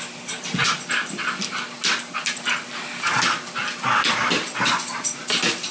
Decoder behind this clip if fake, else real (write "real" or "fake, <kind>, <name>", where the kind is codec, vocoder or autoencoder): real